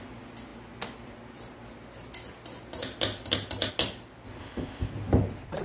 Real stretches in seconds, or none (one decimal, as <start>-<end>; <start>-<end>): 0.0-4.4; 4.9-5.6